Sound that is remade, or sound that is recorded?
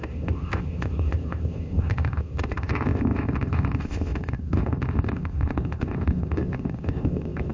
remade